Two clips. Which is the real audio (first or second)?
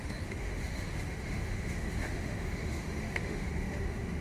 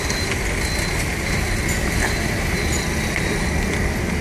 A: second